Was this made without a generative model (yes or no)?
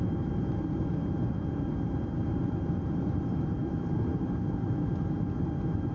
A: no